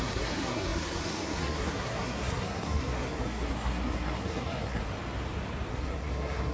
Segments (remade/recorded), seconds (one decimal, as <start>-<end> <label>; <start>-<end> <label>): 0.0-4.8 remade; 4.8-5.7 recorded; 5.7-6.5 remade